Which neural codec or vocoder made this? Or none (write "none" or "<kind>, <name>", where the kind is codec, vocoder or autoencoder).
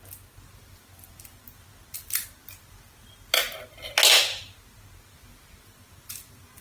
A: none